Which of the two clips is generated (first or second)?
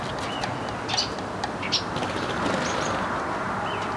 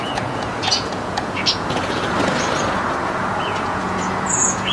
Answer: second